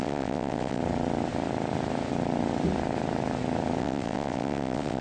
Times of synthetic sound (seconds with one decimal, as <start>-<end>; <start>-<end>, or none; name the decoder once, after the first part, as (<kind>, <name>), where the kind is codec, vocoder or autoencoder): 0.0-0.8 (vocoder, WaveNeXt); 3.8-5.0